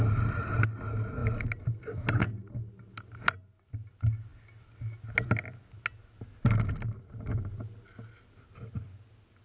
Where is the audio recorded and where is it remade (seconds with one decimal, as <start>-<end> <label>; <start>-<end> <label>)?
0.0-9.4 recorded